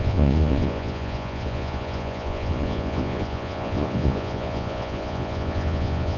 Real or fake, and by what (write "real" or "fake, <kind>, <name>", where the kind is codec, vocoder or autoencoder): fake, vocoder, Vocos